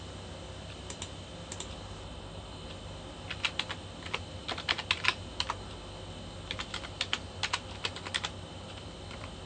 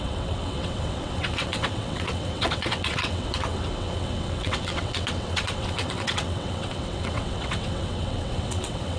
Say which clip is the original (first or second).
first